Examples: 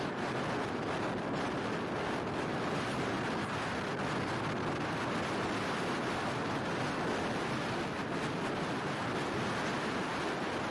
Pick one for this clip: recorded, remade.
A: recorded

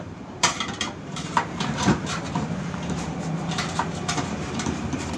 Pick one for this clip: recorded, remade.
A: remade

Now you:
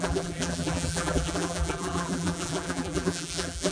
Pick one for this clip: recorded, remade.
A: remade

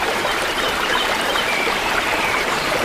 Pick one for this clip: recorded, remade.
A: remade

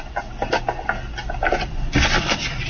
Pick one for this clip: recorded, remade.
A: recorded